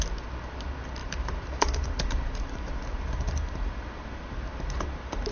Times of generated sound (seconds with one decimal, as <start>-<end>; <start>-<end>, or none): 1.0-4.2